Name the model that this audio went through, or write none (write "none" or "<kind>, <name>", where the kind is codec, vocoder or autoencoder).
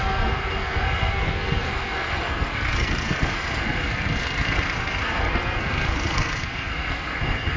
codec, SNAC